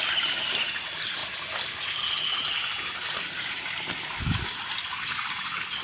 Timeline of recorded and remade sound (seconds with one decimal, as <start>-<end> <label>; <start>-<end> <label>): 0.0-5.8 recorded